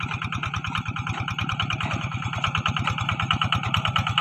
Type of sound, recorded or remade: recorded